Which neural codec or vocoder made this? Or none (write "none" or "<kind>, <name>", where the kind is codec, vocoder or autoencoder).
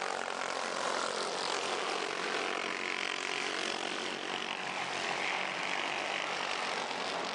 none